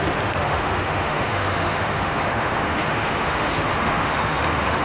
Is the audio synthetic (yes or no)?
yes